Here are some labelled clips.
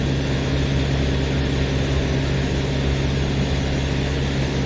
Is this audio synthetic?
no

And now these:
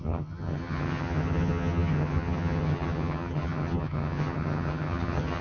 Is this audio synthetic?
yes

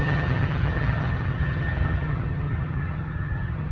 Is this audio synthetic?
yes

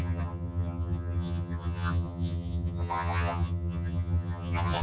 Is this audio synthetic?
yes